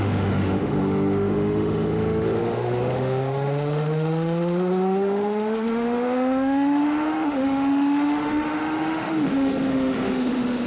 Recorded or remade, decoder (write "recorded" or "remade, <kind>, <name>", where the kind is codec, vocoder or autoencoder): remade, autoencoder, DAC-VAE